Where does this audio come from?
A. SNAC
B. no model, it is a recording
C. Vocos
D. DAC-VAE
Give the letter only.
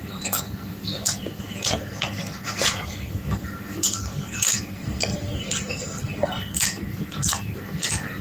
A